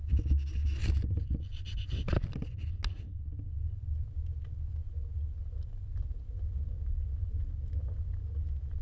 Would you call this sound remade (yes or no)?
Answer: no